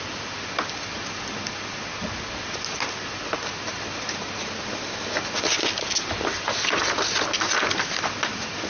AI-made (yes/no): no